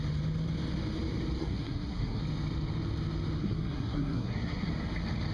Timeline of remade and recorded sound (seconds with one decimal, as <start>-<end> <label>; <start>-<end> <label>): 0.0-1.4 recorded; 1.4-2.2 remade; 2.2-3.4 recorded; 3.4-4.7 remade; 4.7-5.3 recorded